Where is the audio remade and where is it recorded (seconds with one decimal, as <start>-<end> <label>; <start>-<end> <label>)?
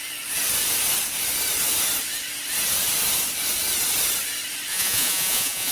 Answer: 0.0-4.7 recorded; 4.7-5.7 remade